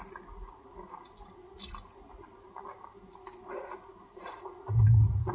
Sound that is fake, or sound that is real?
real